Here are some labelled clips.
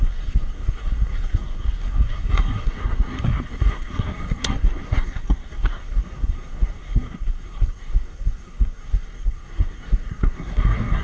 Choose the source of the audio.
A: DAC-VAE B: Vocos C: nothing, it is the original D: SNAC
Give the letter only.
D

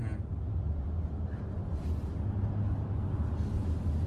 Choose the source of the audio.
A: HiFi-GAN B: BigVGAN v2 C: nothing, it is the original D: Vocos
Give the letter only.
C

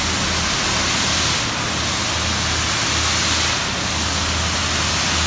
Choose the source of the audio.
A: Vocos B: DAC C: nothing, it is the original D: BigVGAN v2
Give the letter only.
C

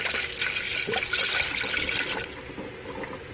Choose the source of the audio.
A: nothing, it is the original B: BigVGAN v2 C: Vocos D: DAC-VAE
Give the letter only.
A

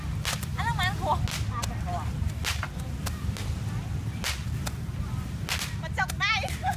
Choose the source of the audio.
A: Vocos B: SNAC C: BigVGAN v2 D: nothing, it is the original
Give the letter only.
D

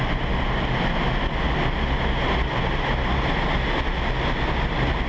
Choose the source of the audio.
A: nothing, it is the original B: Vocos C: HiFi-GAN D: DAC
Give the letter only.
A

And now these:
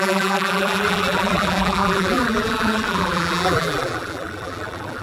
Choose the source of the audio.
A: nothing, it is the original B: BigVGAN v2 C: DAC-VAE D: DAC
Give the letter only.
B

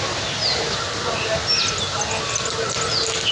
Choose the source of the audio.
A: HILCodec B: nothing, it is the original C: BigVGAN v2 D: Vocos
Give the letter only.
B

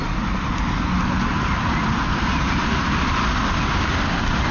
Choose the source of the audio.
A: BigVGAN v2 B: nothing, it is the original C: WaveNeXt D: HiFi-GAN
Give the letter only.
B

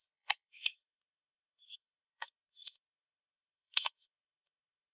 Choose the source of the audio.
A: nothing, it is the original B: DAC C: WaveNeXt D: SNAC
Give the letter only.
D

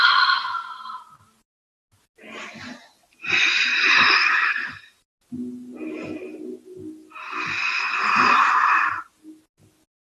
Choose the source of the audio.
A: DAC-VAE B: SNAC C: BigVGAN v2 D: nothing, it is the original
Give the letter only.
D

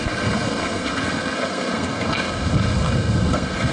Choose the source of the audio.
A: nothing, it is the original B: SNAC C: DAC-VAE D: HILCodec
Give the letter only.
B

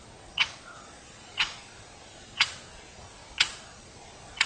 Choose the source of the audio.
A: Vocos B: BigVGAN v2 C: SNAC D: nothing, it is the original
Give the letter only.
A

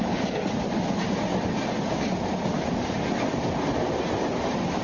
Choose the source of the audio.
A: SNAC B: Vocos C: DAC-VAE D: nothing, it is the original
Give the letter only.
D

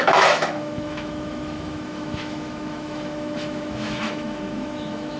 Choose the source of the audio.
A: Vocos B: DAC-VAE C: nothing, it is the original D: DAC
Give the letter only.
B